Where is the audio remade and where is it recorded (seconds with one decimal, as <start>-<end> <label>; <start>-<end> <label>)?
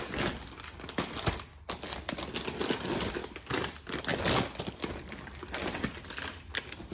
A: 0.0-6.9 recorded